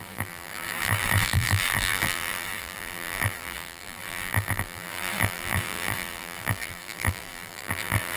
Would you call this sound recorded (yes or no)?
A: no